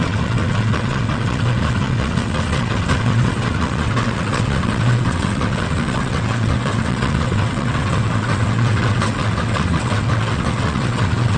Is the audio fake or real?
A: fake